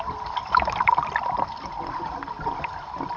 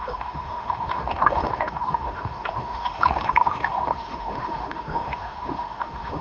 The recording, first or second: first